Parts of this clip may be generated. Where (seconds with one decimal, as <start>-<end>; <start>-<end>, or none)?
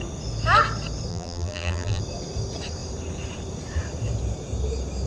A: 1.1-2.0